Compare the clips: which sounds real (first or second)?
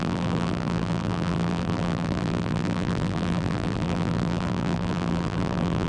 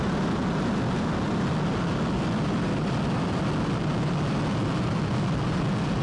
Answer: second